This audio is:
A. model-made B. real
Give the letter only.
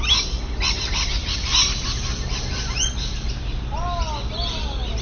B